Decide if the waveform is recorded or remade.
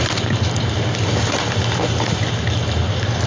recorded